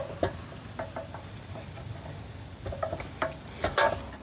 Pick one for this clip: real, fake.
real